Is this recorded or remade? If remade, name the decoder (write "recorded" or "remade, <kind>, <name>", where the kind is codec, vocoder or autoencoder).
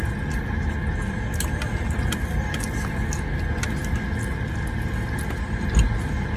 recorded